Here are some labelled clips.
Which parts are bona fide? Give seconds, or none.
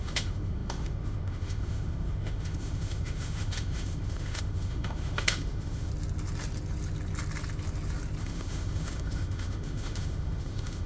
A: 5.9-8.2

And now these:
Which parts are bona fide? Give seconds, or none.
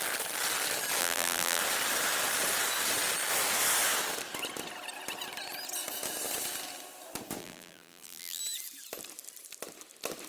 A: 0.0-1.0; 1.6-7.4; 8.4-10.3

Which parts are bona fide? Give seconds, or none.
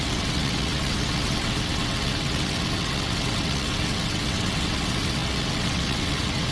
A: none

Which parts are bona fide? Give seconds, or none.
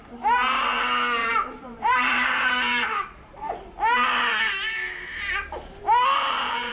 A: 0.0-1.2; 3.5-6.7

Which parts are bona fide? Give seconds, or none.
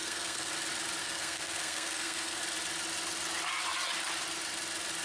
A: 0.5-1.0; 2.4-5.0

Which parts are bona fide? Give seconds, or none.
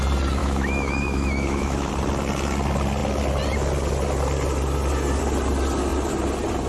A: 0.0-0.4; 1.9-6.7